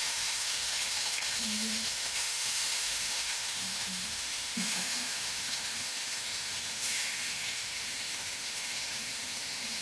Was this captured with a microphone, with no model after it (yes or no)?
no